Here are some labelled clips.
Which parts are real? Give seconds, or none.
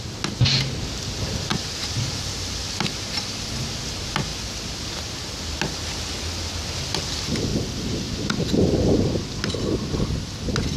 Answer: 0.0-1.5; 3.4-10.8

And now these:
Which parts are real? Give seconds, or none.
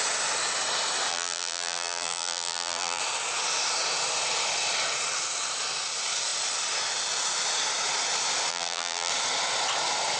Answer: 0.0-1.1; 3.0-8.5; 9.1-10.2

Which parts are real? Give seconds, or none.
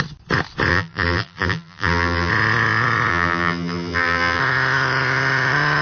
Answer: 0.0-0.7; 2.3-3.1; 4.4-5.8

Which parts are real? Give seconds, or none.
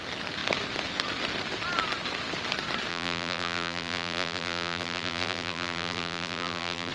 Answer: 0.0-2.9